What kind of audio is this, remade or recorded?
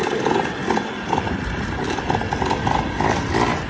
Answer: recorded